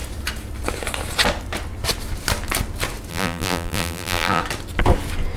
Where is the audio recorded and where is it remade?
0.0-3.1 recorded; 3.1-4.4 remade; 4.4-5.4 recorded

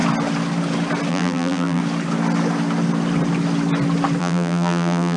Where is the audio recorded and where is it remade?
0.0-1.1 recorded; 1.1-1.8 remade; 1.8-4.2 recorded; 4.2-5.2 remade

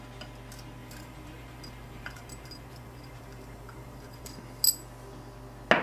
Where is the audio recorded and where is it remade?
0.0-0.8 recorded; 0.8-4.3 remade; 4.3-5.8 recorded

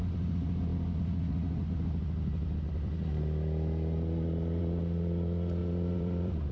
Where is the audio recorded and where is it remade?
0.0-5.6 recorded; 5.6-6.5 remade

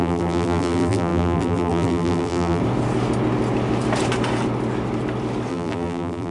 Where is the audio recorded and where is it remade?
0.0-2.6 remade; 2.6-5.5 recorded; 5.5-6.3 remade